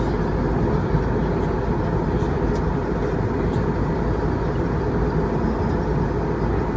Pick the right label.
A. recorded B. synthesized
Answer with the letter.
A